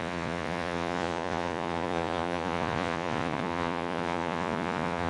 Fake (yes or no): yes